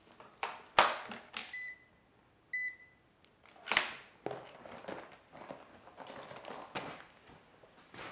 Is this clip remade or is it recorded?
recorded